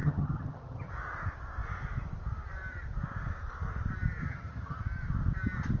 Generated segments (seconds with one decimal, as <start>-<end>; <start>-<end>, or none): 0.0-0.9; 4.2-4.8